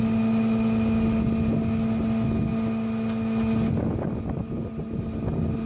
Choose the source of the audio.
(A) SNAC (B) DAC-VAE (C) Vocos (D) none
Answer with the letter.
D